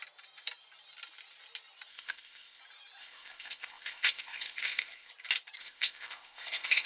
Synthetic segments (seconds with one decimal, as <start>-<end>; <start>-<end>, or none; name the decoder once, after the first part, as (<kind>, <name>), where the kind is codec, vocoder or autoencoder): 1.9-2.6 (codec, ZipCodec); 3.0-5.1; 5.6-6.9

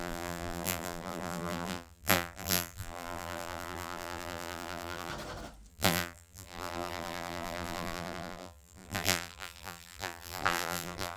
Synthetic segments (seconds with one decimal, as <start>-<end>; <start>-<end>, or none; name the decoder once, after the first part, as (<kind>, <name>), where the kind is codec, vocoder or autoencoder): 0.0-5.1 (vocoder, BigVGAN v2); 5.7-11.2

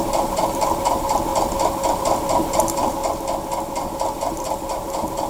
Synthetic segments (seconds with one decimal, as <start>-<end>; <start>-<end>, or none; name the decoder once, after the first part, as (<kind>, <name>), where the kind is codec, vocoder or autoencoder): 0.0-1.3 (vocoder, BigVGAN v2); 2.0-3.0; 4.2-5.3

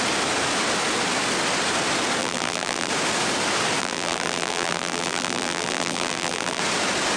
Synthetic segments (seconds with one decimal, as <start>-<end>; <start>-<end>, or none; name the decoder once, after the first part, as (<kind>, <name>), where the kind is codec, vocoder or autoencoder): 2.2-2.9 (vocoder, BigVGAN v2); 3.8-6.6